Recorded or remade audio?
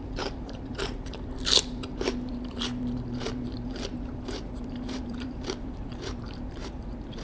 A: remade